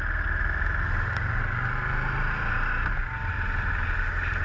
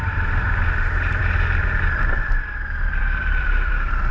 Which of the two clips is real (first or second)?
first